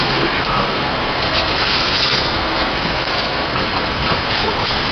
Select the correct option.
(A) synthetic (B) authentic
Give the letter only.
A